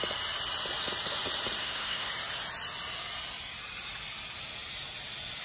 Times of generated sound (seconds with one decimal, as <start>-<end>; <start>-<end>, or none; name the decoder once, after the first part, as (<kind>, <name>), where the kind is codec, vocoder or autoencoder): 1.6-2.1 (codec, SNAC)